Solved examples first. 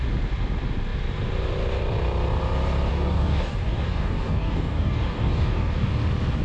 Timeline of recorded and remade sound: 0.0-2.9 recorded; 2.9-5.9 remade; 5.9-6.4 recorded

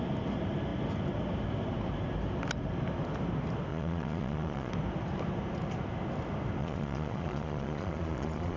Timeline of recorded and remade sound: 0.0-3.7 recorded; 3.7-4.7 remade; 4.7-6.6 recorded; 6.6-8.6 remade

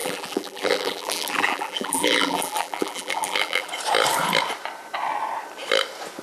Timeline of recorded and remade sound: 0.0-3.7 remade; 3.7-6.2 recorded